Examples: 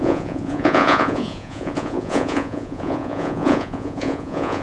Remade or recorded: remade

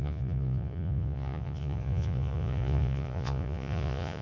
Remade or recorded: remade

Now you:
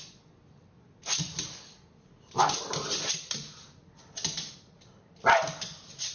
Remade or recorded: recorded